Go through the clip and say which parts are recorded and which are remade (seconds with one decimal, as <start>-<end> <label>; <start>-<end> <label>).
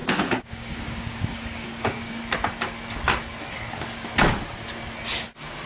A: 0.0-2.2 remade; 2.2-5.7 recorded